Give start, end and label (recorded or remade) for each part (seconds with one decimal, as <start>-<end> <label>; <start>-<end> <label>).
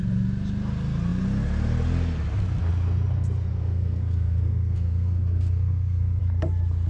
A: 0.0-3.5 recorded; 3.5-6.2 remade; 6.2-6.9 recorded